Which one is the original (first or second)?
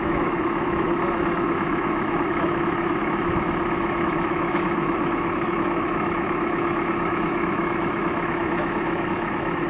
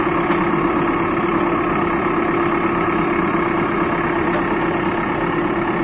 second